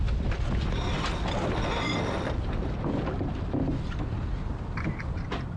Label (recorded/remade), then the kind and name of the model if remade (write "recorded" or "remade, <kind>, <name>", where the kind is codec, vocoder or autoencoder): recorded